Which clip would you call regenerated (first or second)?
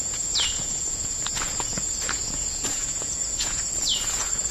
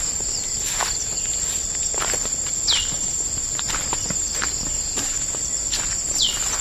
first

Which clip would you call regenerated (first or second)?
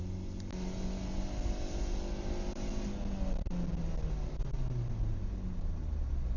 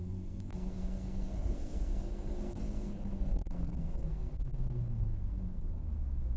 second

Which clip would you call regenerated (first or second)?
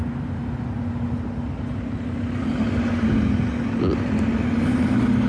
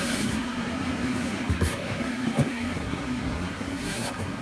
second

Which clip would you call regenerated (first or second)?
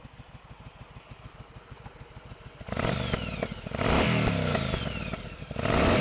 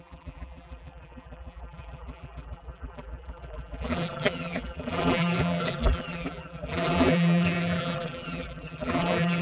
second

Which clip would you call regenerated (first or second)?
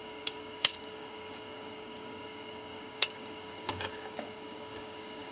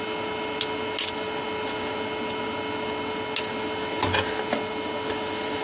first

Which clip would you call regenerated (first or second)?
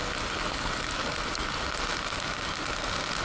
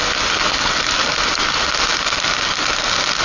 second